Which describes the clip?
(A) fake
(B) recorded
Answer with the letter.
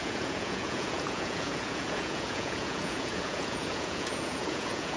A